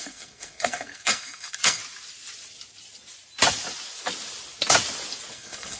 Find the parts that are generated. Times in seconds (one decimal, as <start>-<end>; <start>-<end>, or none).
0.0-1.8; 5.3-5.8